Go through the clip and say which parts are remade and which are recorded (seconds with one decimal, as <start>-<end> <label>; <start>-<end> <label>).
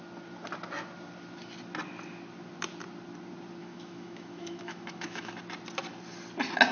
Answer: 0.0-3.6 recorded; 3.6-5.3 remade; 5.3-6.7 recorded